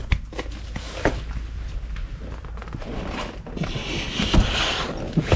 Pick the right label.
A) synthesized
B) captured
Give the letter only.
B